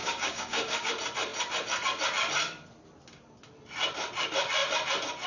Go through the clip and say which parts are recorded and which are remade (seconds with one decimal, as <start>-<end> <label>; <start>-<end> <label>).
0.0-0.9 remade; 0.9-5.3 recorded